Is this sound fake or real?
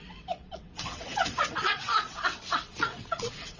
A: fake